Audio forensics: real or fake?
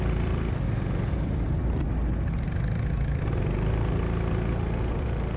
real